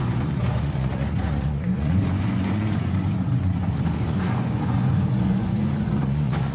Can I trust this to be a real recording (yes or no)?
no